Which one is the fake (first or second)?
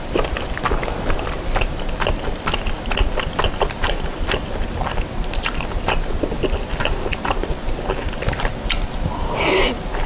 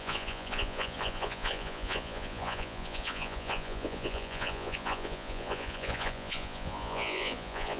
second